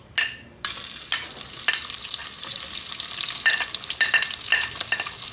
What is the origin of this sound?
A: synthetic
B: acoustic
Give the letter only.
B